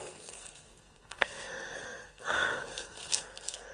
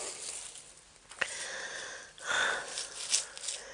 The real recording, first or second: second